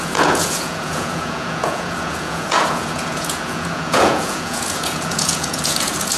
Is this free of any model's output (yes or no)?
no